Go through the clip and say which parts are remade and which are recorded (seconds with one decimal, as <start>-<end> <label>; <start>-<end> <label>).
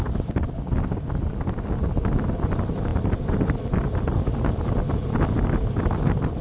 0.0-6.4 recorded